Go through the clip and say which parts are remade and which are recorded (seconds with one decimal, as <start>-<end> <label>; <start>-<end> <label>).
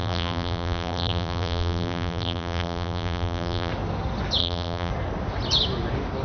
0.0-3.7 remade; 3.7-4.4 recorded; 4.4-4.9 remade; 4.9-6.2 recorded